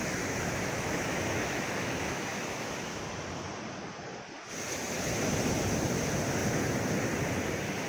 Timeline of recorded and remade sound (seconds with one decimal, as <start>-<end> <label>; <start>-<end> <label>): 0.0-3.0 remade; 3.0-7.9 recorded